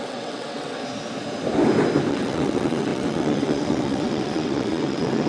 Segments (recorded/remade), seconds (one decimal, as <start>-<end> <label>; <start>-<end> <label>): 0.0-0.8 remade; 0.8-2.1 recorded; 2.1-5.3 remade